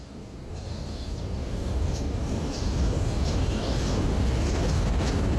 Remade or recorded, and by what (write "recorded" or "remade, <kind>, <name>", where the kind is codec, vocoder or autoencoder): remade, codec, DAC